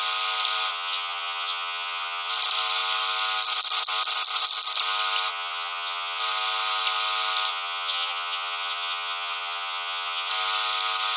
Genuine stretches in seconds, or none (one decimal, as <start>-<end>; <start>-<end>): 0.0-0.7; 2.3-5.3; 6.2-7.5; 10.3-11.2